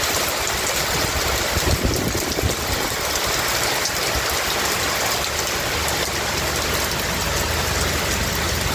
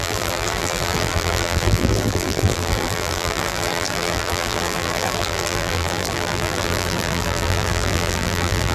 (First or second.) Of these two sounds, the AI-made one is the second